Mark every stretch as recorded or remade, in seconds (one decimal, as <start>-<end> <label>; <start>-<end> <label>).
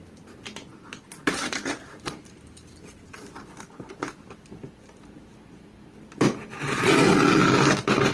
0.0-0.7 recorded; 0.7-2.4 remade; 2.4-8.1 recorded